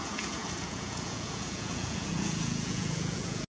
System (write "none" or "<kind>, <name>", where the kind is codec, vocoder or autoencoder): vocoder, Vocos